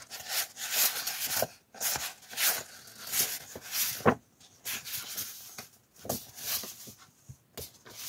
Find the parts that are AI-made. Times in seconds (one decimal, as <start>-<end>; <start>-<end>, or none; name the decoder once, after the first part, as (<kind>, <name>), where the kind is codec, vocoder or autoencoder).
none